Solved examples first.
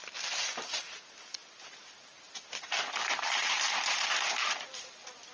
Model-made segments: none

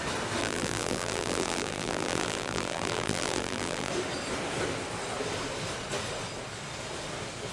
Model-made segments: 0.4-3.9 (vocoder, BigVGAN v2)

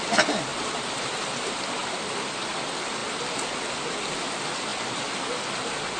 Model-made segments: 1.8-2.5 (vocoder, BigVGAN v2)

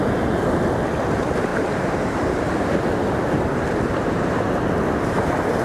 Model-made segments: 1.5-2.4 (vocoder, BigVGAN v2)

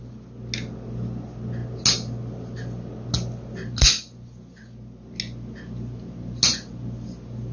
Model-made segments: none